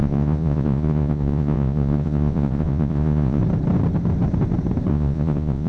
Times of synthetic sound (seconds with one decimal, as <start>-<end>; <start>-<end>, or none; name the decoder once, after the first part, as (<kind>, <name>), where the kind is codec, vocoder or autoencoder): 0.0-3.4 (vocoder, Vocos); 4.9-5.7